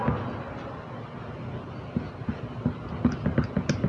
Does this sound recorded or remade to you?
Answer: recorded